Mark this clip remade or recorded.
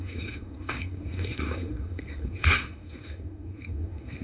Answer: remade